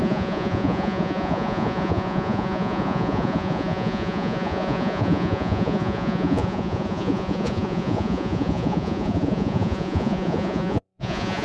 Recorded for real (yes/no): no